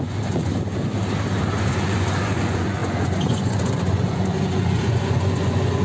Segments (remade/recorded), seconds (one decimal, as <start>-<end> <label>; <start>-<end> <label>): 0.0-0.5 remade; 0.5-1.7 recorded; 1.7-5.8 remade